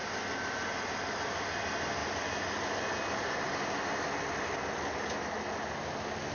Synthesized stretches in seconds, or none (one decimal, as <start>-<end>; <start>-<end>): none